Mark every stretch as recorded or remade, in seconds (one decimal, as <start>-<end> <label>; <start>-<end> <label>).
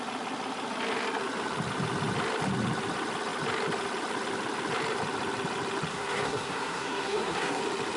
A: 0.0-5.9 recorded; 5.9-7.6 remade; 7.6-8.0 recorded